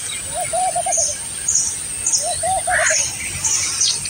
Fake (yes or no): no